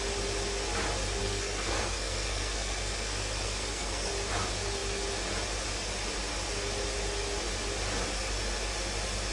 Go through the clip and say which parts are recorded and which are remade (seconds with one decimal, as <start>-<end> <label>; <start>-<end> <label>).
0.0-1.2 recorded; 1.2-4.1 remade; 4.1-9.3 recorded